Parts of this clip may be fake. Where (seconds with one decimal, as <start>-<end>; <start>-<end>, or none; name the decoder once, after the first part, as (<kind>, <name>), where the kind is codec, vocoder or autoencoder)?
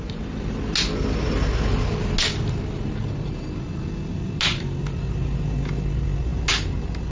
none